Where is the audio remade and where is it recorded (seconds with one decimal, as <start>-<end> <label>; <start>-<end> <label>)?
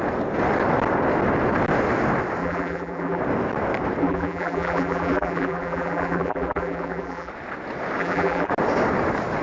0.0-2.4 recorded; 2.4-3.2 remade; 3.2-4.0 recorded; 4.0-7.3 remade; 7.3-8.0 recorded; 8.0-8.5 remade; 8.5-9.4 recorded